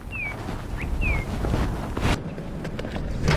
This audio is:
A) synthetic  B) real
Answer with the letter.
B